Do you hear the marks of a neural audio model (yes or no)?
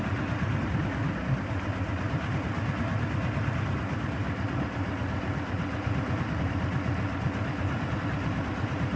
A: no